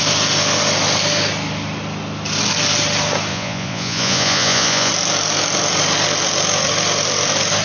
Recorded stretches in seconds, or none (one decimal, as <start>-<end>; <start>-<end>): 0.0-3.3; 4.9-7.6